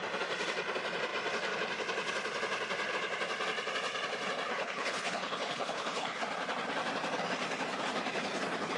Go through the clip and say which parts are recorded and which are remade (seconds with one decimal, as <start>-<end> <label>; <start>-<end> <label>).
0.0-4.5 recorded; 4.5-6.2 remade; 6.2-8.8 recorded